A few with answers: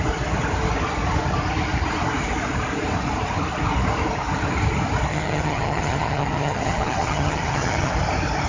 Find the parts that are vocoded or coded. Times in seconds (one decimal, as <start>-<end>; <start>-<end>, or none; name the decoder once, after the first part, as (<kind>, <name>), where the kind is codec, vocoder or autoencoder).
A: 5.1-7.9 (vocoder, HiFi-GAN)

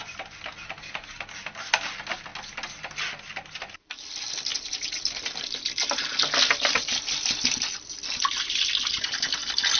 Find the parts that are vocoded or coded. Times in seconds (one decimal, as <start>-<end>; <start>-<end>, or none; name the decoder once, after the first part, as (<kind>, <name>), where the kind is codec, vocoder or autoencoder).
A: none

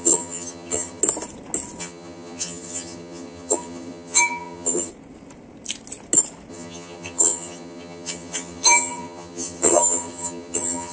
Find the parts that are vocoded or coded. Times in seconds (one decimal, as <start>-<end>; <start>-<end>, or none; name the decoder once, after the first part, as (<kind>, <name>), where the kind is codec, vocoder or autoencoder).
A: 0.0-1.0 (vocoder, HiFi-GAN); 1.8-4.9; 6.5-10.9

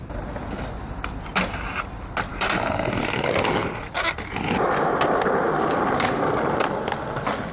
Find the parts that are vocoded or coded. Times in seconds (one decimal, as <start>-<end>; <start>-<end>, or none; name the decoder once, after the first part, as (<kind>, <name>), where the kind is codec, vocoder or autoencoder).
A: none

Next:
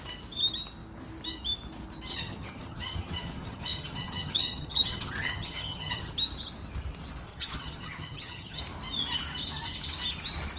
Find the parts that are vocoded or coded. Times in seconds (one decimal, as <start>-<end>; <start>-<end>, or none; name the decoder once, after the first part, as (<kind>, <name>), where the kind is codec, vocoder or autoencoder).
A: 2.1-6.1 (vocoder, HiFi-GAN); 7.3-8.6

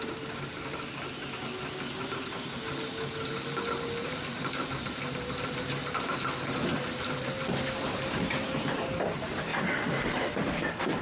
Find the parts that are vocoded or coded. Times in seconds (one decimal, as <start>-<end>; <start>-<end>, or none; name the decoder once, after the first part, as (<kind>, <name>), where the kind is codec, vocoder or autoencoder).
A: none

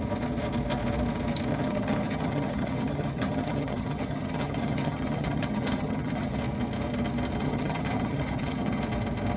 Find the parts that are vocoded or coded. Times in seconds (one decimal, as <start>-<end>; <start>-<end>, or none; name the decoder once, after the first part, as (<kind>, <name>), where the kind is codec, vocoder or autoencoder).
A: 1.5-6.4 (vocoder, HiFi-GAN); 7.4-8.8